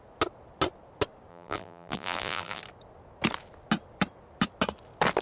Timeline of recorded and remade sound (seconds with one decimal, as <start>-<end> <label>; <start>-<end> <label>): 0.0-1.3 recorded; 1.3-2.6 remade; 2.6-5.2 recorded